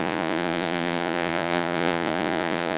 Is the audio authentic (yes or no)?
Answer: no